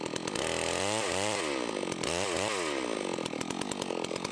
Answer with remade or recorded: recorded